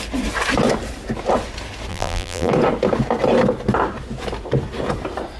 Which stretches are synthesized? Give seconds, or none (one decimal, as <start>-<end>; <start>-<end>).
1.9-2.5